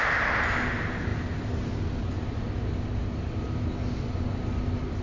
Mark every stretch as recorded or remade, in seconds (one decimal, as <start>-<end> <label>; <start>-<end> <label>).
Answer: 0.0-5.0 recorded